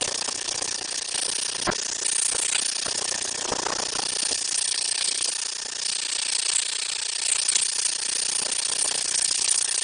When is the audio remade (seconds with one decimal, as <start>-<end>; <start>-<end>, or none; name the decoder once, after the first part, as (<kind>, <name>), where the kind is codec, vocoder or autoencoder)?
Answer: 0.0-1.2 (codec, HILCodec); 2.9-3.5; 4.3-5.3; 8.8-9.8